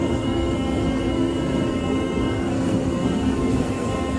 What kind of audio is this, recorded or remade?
remade